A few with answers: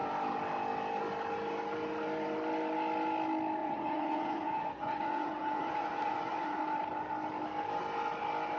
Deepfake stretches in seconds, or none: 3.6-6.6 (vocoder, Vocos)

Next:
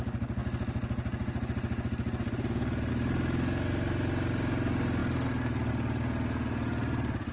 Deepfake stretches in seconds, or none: none

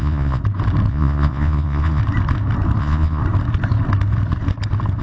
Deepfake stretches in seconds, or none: 0.0-0.4 (vocoder, Vocos); 0.9-2.0; 2.8-3.2

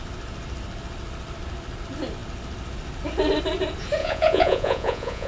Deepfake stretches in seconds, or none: 4.0-5.3 (vocoder, Vocos)

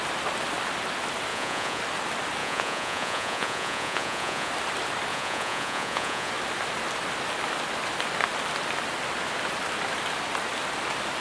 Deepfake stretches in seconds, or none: 1.3-1.8 (vocoder, Vocos); 2.4-4.5; 5.1-6.3

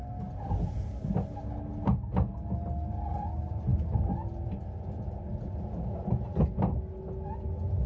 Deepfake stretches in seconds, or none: none

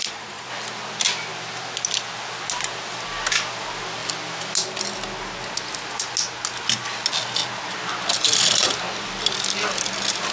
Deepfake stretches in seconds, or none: 0.0-0.5 (vocoder, Vocos)